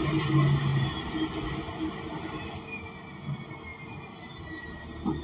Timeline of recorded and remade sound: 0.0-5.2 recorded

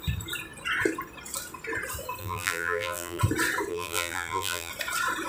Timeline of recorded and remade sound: 0.0-2.2 recorded; 2.2-3.2 remade; 3.2-3.7 recorded; 3.7-4.7 remade; 4.7-5.3 recorded

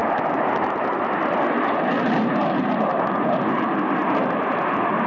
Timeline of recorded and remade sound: 0.0-5.1 recorded

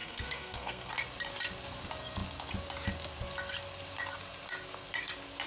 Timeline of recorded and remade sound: 0.0-0.9 remade; 0.9-5.5 recorded